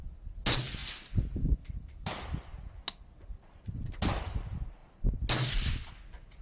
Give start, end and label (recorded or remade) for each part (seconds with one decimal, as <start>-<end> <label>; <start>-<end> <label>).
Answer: 0.0-6.4 recorded

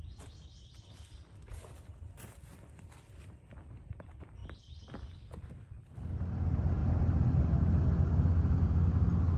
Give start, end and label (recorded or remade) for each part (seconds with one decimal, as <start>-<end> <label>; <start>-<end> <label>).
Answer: 0.0-1.9 recorded; 1.9-2.8 remade; 2.8-4.4 recorded; 4.4-6.1 remade; 6.1-9.4 recorded